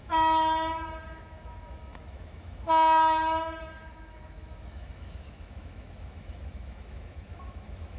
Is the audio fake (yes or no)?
yes